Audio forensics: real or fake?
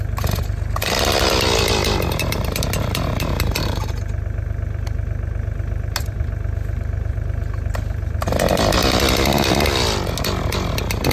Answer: real